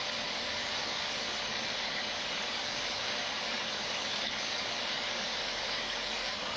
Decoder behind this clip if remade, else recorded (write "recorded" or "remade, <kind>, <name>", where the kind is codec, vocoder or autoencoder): remade, codec, DAC